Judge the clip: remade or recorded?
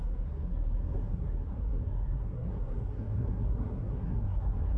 remade